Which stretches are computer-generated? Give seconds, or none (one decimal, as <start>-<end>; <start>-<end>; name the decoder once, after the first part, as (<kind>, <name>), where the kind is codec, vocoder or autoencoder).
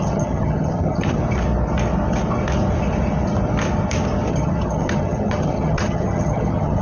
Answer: 0.0-1.2 (vocoder, HiFi-GAN); 4.3-6.8